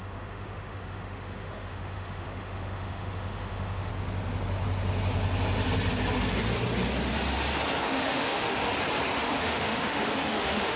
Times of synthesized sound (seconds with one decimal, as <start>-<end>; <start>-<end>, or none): 0.0-3.9; 7.8-8.7; 9.2-10.8